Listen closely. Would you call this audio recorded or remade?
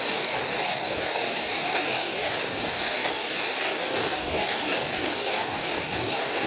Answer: remade